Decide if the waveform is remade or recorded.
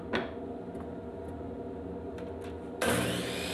recorded